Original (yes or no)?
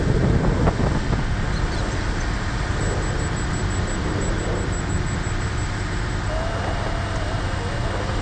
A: yes